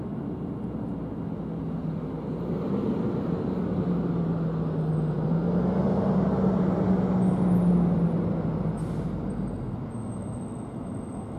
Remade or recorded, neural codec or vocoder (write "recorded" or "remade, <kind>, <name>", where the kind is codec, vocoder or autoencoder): recorded